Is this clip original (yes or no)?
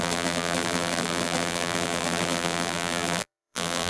no